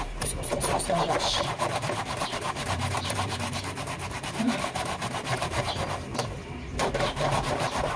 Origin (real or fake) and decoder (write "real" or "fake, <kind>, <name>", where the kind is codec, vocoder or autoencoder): fake, vocoder, BigVGAN v2